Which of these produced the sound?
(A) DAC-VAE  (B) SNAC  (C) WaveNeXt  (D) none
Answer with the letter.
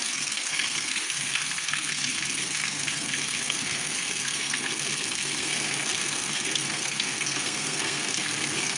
B